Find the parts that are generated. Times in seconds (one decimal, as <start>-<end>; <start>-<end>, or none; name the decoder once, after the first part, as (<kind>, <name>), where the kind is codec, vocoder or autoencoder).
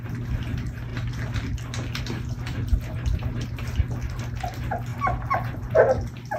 none